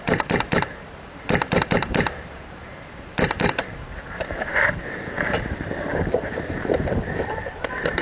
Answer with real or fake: fake